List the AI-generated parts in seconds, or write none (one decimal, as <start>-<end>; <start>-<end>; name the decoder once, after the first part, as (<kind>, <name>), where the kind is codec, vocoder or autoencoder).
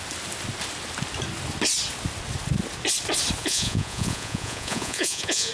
3.4-5.5 (vocoder, Vocos)